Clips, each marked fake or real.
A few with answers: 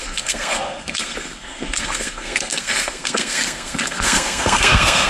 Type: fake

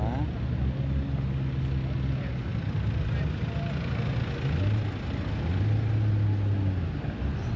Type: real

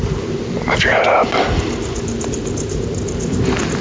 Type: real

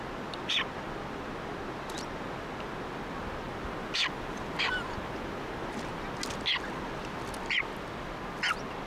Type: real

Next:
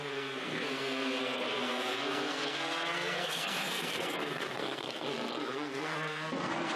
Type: fake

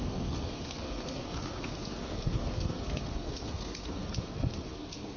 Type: fake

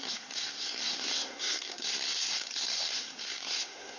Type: fake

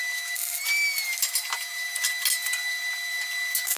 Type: real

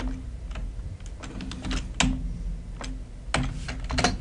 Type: real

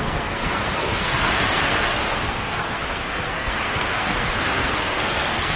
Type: fake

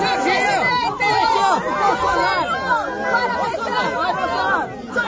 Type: real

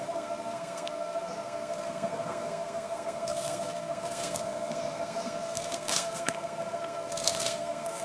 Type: fake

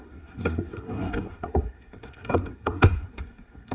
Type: fake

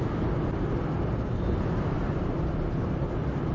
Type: real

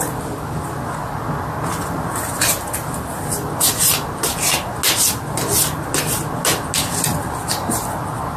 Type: real